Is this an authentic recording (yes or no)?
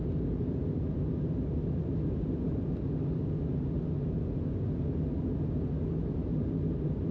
yes